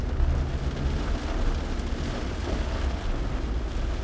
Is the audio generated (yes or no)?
no